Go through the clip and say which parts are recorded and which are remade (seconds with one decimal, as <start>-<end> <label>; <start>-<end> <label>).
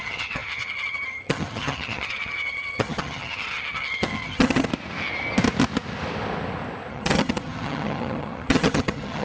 0.0-4.7 remade; 4.7-6.9 recorded; 6.9-9.2 remade